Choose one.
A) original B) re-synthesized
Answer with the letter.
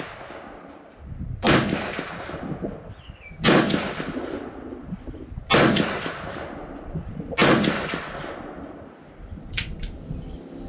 A